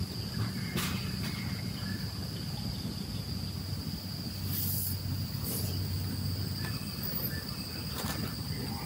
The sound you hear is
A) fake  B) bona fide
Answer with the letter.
B